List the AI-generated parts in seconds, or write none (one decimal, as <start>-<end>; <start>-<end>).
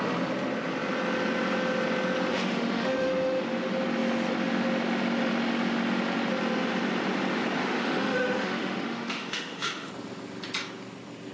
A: 2.3-3.4; 7.6-9.9